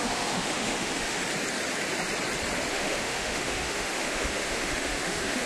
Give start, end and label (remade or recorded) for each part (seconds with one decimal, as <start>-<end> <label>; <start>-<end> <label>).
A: 0.0-1.2 remade; 1.2-2.7 recorded; 2.7-5.5 remade